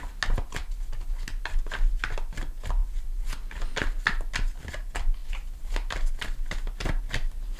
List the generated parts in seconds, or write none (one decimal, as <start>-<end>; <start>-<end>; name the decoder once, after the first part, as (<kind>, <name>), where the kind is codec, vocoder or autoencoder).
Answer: none